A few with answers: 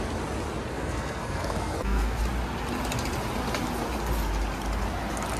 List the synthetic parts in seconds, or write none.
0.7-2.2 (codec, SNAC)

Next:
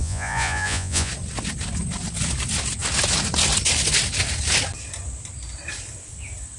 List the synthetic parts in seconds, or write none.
0.0-1.1 (vocoder, Vocos)

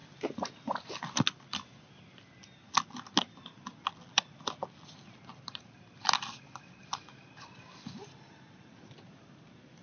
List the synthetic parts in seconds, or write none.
none